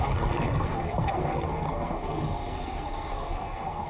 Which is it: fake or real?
fake